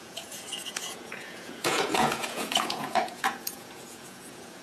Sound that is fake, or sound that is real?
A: fake